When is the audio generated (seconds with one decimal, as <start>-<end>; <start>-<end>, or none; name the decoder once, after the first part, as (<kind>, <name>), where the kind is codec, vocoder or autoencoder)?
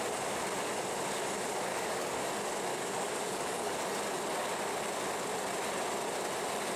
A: 1.7-2.3 (codec, DAC); 2.7-3.8